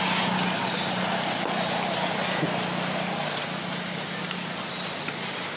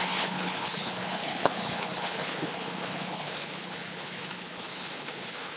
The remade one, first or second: second